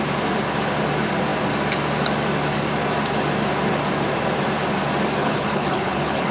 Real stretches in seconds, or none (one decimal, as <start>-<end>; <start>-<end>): 0.0-5.2